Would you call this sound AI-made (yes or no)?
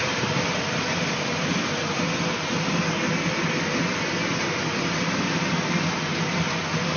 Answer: no